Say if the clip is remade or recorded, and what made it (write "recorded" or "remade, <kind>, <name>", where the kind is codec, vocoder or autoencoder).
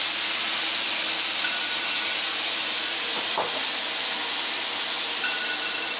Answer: recorded